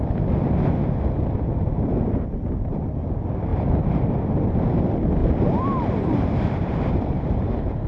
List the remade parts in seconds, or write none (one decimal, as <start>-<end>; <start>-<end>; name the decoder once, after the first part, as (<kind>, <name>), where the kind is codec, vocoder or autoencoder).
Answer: 5.2-7.9 (vocoder, BigVGAN v2)